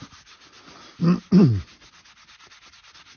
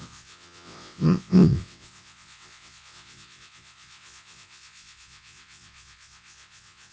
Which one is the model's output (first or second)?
second